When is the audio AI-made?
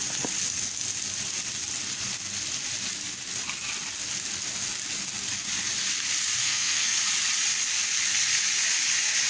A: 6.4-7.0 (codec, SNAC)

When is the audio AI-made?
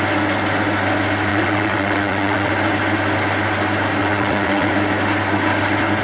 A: 1.3-2.5 (vocoder, WaveNeXt); 4.0-4.7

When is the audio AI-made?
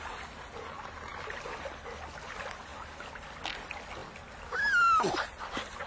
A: none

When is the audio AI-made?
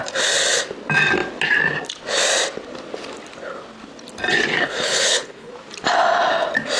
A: 4.6-5.5 (codec, HILCodec)